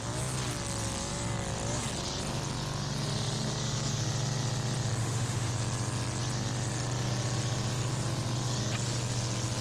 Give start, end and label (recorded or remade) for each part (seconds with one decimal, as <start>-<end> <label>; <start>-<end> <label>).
0.0-5.0 recorded; 5.0-5.5 remade; 5.5-9.6 recorded